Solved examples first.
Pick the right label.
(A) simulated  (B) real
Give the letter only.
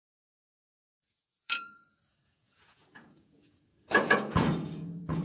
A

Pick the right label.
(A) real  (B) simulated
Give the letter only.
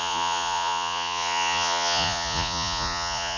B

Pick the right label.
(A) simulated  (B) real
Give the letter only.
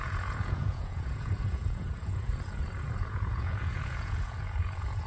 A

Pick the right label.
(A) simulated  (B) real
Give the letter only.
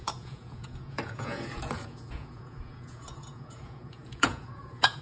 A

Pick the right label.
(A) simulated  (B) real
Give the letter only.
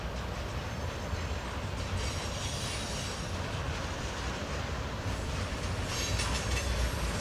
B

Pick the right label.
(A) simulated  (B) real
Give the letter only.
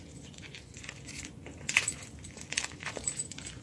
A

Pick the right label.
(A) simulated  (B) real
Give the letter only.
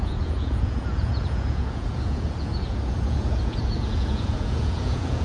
A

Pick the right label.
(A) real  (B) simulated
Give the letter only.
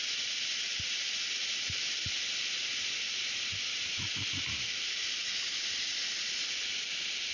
A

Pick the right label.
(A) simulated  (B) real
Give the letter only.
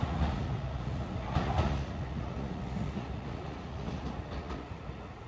A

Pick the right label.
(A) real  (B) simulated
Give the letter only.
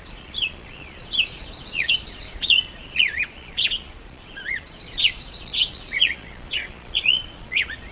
B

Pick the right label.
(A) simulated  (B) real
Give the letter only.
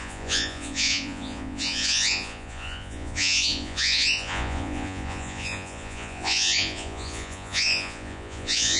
A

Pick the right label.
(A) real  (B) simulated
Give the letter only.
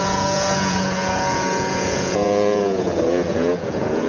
B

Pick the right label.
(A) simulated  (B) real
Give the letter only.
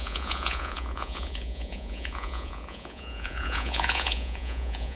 A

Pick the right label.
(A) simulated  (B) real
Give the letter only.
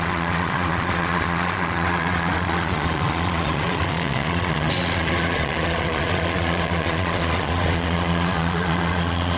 A